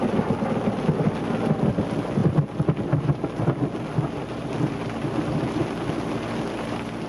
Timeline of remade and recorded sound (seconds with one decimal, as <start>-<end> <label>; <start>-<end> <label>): 0.0-7.1 recorded